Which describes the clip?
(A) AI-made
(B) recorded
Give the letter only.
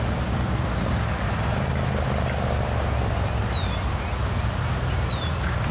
B